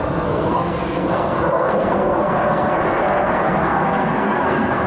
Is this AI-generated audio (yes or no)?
yes